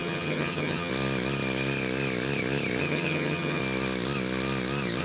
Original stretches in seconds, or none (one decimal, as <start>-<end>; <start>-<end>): 0.9-2.8; 3.6-5.0